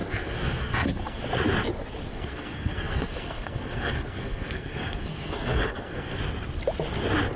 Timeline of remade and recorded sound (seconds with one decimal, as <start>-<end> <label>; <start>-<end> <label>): 0.0-1.2 remade; 1.2-2.1 recorded; 2.1-6.2 remade; 6.2-7.4 recorded